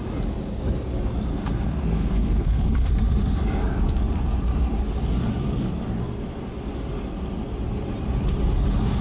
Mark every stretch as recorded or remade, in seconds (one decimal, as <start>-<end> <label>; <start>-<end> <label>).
0.0-1.3 recorded; 1.3-2.9 remade; 2.9-9.0 recorded